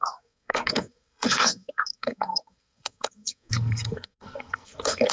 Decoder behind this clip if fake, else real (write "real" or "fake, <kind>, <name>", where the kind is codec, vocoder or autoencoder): fake, codec, SNAC